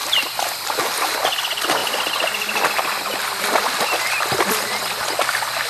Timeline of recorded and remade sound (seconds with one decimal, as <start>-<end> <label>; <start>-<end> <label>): 0.0-5.7 recorded